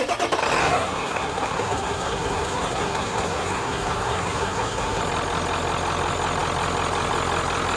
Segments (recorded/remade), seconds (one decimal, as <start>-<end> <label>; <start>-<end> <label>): 0.0-0.6 recorded; 0.6-5.0 remade; 5.0-7.8 recorded

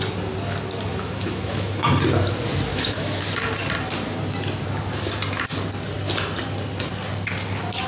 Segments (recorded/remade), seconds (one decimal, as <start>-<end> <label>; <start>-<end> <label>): 0.0-0.9 recorded; 0.9-1.9 remade; 1.9-2.7 recorded; 2.7-3.2 remade; 3.2-7.9 recorded

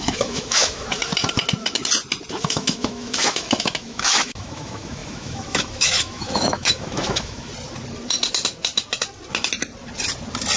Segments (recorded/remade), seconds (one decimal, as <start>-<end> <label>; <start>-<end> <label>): 0.0-1.1 remade; 1.1-2.4 recorded; 2.4-7.5 remade; 7.5-10.6 recorded

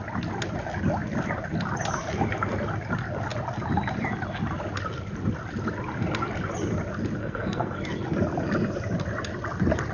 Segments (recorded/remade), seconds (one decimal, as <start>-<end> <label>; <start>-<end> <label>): 0.0-7.2 recorded; 7.2-7.8 remade; 7.8-9.9 recorded

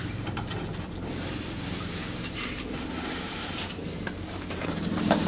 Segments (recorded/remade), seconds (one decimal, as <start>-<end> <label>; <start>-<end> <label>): 0.0-5.3 remade

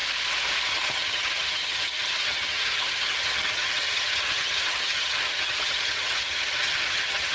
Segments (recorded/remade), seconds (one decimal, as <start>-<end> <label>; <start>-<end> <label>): 0.0-0.7 recorded; 0.7-7.3 remade

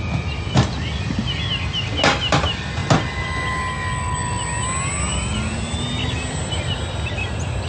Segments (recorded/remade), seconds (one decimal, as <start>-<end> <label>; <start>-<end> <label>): 0.0-7.7 recorded

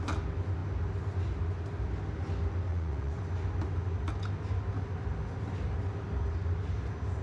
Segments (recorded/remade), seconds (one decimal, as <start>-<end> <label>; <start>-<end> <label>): 0.0-2.7 recorded; 2.7-3.2 remade; 3.2-7.2 recorded